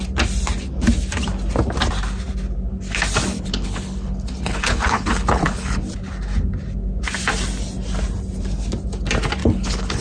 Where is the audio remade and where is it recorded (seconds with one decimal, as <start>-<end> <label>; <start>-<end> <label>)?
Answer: 0.0-3.3 recorded; 3.3-5.8 remade; 5.8-9.4 recorded; 9.4-10.0 remade

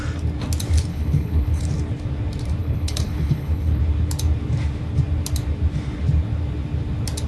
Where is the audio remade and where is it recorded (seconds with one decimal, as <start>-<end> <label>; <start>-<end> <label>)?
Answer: 0.0-0.9 recorded; 0.9-1.6 remade; 1.6-2.6 recorded; 2.6-3.8 remade; 3.8-7.3 recorded